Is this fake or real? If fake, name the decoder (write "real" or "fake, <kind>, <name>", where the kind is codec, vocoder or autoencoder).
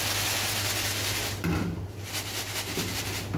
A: real